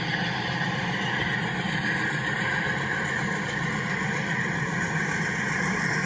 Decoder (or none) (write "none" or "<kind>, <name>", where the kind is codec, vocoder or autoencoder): none